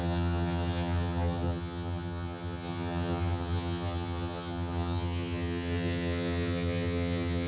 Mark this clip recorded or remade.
remade